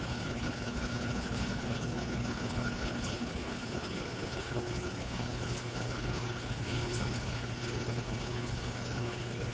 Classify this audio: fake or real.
fake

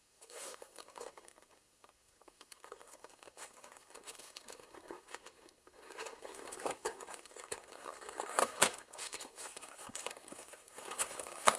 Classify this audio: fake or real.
fake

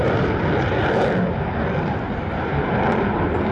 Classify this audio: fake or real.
real